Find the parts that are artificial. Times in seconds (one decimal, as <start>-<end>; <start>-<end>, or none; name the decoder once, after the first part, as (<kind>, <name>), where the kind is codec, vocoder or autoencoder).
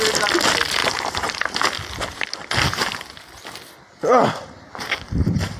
0.8-1.5 (vocoder, BigVGAN v2)